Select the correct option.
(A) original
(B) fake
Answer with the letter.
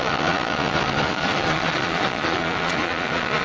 B